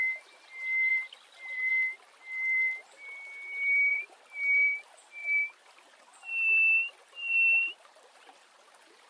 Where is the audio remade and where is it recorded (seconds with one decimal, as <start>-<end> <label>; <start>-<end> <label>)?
0.0-0.9 recorded; 0.9-1.7 remade; 1.7-3.9 recorded; 3.9-4.5 remade; 4.5-5.2 recorded; 5.2-6.3 remade; 6.3-7.0 recorded; 7.0-8.6 remade; 8.6-9.1 recorded